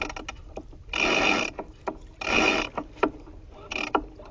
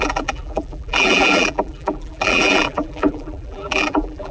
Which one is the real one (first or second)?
first